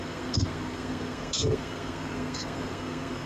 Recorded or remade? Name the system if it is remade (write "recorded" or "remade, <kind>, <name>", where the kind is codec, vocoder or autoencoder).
remade, codec, SNAC